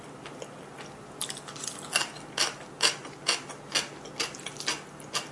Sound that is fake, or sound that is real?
real